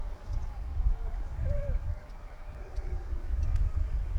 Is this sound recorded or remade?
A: remade